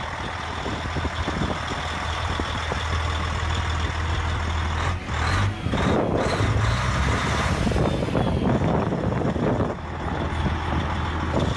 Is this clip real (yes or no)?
yes